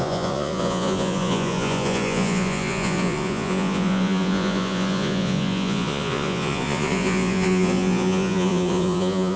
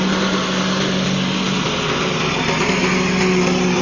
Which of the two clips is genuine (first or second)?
second